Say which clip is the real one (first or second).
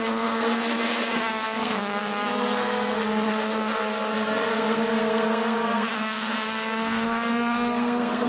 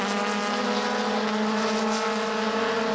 second